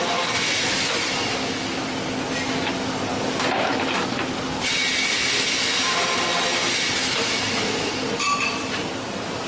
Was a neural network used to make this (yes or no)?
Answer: no